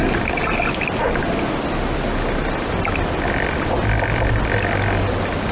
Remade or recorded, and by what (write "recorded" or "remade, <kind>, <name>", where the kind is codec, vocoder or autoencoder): recorded